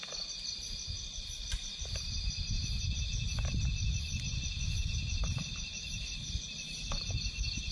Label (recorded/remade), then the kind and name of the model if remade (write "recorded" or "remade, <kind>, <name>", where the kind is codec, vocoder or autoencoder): recorded